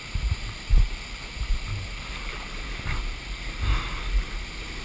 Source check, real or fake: real